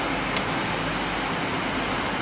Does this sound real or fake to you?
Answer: real